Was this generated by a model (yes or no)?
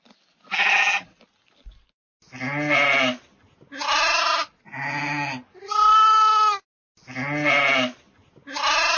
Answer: no